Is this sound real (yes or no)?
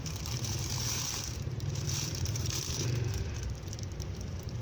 no